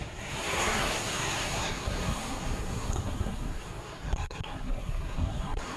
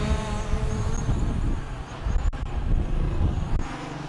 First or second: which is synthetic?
first